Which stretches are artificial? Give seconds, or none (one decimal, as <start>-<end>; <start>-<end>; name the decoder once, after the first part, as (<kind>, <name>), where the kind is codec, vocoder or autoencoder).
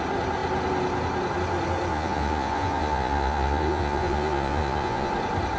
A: 1.9-5.1 (vocoder, Vocos)